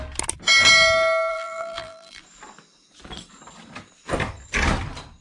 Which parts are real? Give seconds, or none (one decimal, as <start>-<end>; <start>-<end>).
0.0-1.3; 2.2-5.2